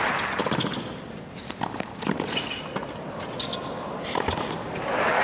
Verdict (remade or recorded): recorded